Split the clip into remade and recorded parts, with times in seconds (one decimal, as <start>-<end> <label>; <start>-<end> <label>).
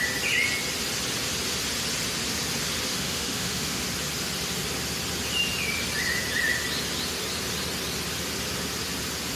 0.0-2.9 recorded; 2.9-3.8 remade; 3.8-9.4 recorded